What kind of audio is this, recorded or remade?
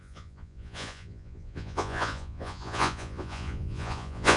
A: remade